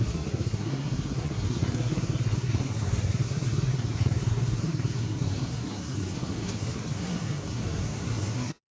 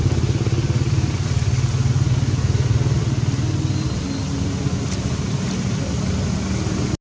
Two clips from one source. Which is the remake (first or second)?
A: first